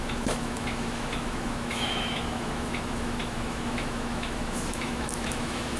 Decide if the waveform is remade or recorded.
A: remade